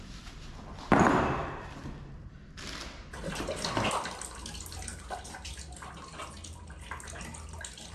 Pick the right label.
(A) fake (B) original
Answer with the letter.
B